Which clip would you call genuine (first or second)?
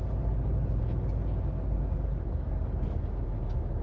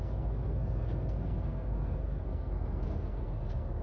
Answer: first